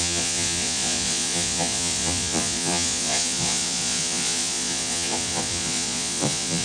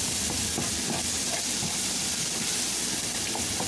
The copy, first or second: first